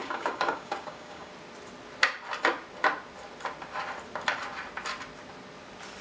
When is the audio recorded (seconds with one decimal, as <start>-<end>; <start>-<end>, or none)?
1.3-6.0